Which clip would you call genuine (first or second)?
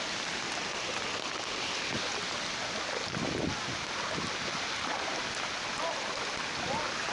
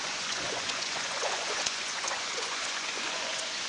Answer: first